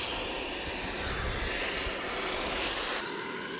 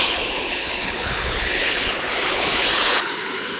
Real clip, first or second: first